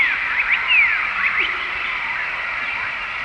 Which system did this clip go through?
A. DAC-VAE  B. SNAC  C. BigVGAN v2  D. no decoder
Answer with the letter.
D